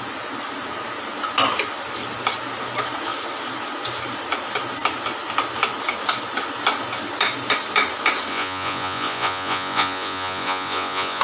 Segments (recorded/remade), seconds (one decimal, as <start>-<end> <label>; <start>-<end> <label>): 0.0-8.3 recorded; 8.3-11.2 remade